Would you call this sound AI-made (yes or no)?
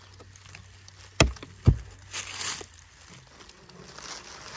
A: no